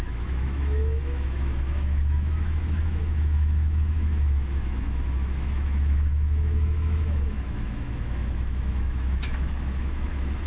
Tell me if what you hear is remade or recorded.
remade